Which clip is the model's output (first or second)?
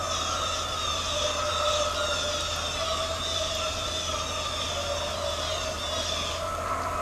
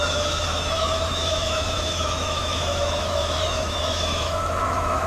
second